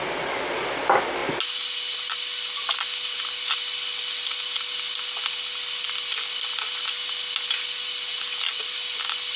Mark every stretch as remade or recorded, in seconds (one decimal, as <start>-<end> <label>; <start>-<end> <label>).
0.0-9.4 recorded